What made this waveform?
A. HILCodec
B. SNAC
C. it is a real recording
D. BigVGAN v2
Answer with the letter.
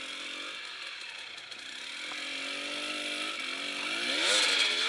C